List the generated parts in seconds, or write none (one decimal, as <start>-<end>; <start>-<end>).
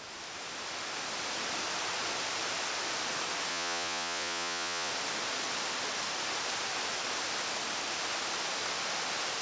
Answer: 3.5-4.9